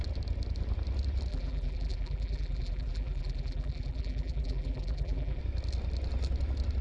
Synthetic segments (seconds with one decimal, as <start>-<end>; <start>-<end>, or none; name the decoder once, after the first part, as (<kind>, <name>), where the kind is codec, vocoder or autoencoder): 1.3-5.4 (vocoder, BigVGAN v2)